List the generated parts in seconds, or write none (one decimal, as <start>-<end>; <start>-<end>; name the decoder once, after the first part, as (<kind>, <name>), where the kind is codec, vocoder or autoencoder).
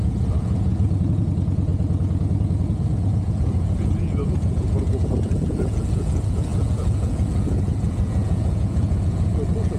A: 0.0-9.8 (vocoder, Vocos)